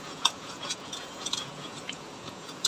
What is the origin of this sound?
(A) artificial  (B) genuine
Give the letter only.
A